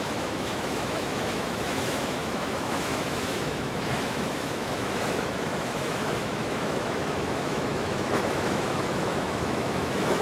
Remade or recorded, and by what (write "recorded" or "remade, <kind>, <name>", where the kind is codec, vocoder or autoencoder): remade, autoencoder, DAC-VAE